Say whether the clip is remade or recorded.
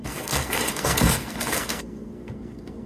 remade